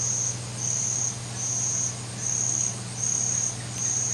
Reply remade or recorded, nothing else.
recorded